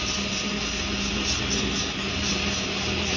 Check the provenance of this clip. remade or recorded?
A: recorded